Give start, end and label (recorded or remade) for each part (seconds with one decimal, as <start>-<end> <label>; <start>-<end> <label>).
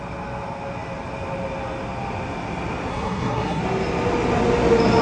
0.0-2.9 recorded; 2.9-3.6 remade; 3.6-5.0 recorded